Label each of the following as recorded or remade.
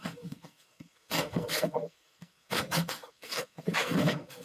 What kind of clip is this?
remade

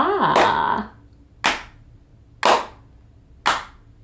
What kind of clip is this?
recorded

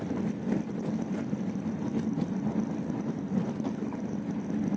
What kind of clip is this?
recorded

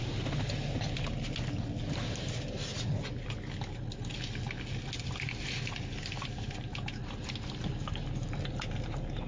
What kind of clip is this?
recorded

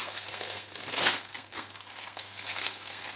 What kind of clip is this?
remade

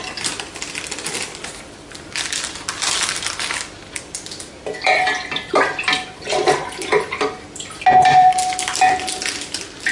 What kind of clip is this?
recorded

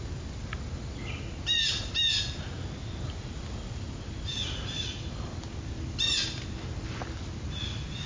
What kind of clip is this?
recorded